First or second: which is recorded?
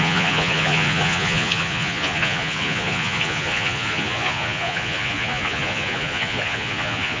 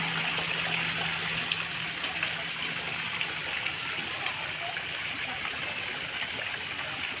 second